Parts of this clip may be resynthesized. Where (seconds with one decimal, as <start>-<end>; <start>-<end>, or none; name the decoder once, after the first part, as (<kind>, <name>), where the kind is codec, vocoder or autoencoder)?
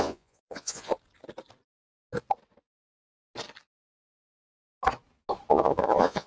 0.0-0.9 (vocoder, Vocos); 3.8-4.2; 5.5-6.3